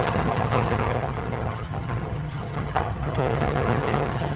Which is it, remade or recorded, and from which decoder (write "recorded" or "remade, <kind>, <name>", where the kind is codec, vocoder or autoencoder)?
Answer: remade, vocoder, HiFi-GAN